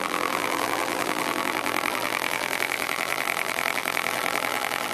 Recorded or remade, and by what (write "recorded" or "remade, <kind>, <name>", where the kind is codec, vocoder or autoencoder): remade, vocoder, BigVGAN v2